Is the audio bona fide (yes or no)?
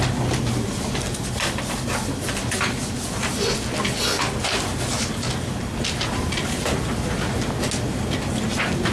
yes